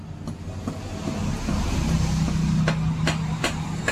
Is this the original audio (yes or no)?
yes